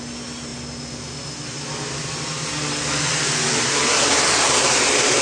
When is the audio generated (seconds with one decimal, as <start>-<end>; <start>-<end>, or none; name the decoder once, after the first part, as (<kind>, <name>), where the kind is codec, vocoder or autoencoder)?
none